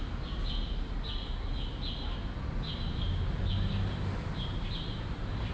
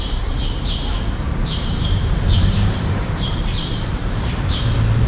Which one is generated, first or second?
second